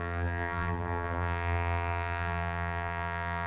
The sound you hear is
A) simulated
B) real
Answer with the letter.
A